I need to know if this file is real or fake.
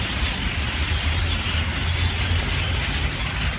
real